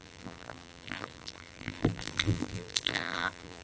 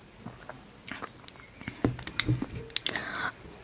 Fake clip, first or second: first